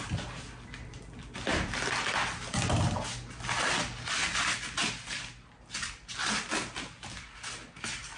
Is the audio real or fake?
real